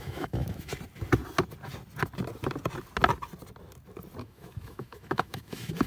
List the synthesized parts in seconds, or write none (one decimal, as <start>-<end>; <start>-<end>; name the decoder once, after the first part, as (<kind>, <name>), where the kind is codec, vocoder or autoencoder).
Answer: 0.0-0.7 (autoencoder, DAC-VAE); 4.2-5.9

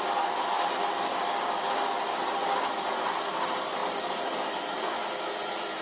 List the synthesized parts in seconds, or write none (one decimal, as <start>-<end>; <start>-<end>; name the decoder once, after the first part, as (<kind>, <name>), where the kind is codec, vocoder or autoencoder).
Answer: 1.1-1.7 (codec, DAC)